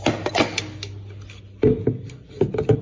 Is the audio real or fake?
real